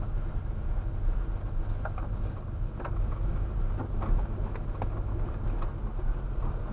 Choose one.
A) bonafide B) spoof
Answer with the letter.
A